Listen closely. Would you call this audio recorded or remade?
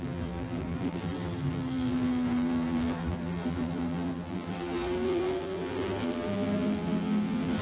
remade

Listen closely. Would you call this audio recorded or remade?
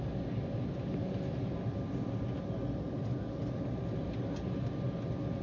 recorded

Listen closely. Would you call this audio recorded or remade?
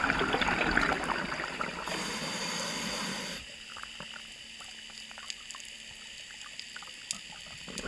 recorded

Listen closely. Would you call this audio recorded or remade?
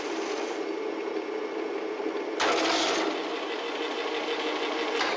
recorded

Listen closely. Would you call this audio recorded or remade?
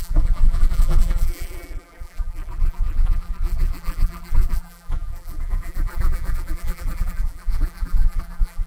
remade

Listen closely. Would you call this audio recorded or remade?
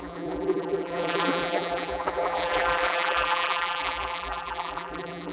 remade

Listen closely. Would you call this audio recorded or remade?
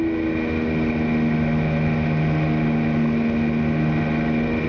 recorded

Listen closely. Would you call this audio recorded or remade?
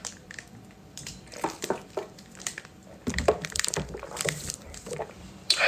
remade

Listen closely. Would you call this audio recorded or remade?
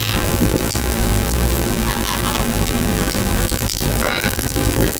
remade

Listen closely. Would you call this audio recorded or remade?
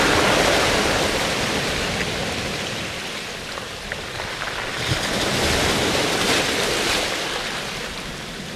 recorded